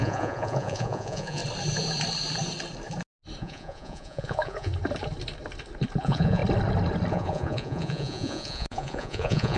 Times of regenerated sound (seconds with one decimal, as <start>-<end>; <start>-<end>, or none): 0.0-1.4; 3.4-4.7; 6.0-6.4; 7.1-9.6